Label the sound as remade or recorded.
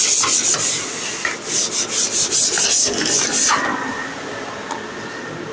recorded